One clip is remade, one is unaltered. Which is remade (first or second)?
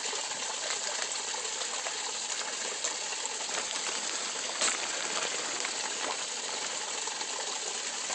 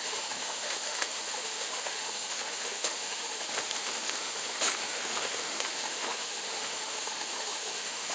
second